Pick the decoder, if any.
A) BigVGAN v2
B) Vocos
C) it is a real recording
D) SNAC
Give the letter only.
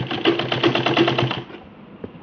C